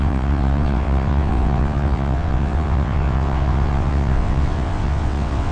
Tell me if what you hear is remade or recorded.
remade